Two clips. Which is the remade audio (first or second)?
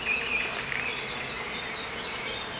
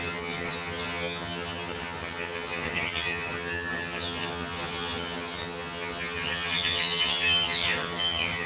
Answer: second